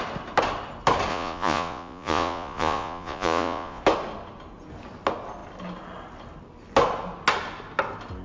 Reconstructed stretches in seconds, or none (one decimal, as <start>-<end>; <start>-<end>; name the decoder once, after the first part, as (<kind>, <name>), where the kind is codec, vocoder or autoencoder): 1.1-3.8 (vocoder, Vocos)